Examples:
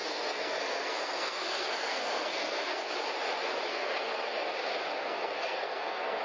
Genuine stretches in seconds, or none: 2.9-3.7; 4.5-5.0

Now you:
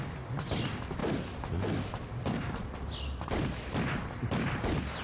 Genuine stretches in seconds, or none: 0.0-1.0; 3.8-5.0

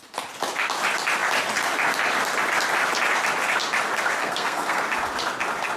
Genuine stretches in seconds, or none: 0.0-4.2; 4.8-5.8

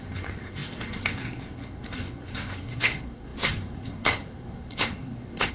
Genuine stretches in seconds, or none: none

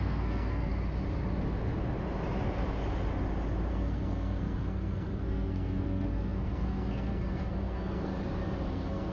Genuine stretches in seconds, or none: 0.7-3.7; 8.1-8.7

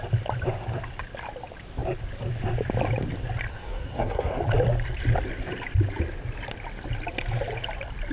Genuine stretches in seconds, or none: 0.0-3.5; 4.4-8.1

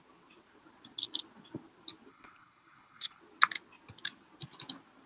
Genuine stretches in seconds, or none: 0.0-2.1; 3.2-5.1

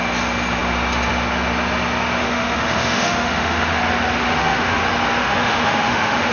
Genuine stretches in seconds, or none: 0.0-2.2; 3.8-4.2; 4.8-5.2